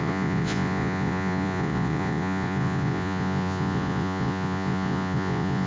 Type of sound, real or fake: fake